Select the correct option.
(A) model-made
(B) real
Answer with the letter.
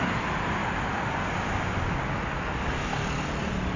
B